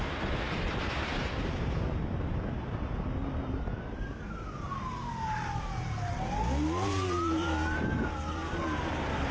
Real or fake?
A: fake